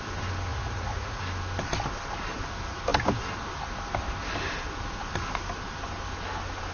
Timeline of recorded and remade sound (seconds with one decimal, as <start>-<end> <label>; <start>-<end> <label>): 0.0-0.5 recorded; 0.5-1.2 remade; 1.2-6.7 recorded